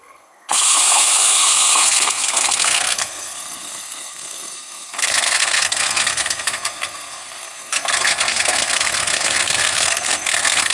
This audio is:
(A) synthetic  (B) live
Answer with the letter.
A